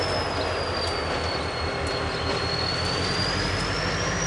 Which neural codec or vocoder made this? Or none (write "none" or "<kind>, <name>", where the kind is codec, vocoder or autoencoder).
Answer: none